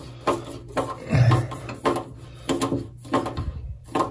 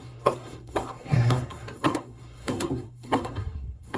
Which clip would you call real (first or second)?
first